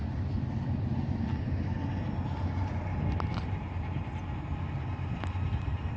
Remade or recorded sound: recorded